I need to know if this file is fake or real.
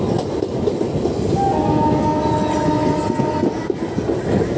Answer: real